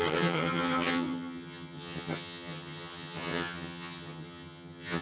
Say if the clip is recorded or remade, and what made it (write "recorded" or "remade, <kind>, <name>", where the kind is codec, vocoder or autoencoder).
remade, vocoder, HiFi-GAN